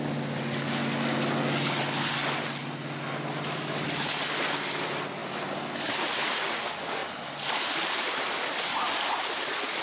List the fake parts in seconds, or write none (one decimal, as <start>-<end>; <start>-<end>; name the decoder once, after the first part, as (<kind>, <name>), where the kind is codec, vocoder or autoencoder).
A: none